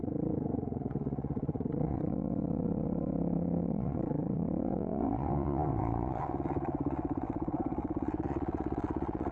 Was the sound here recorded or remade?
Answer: remade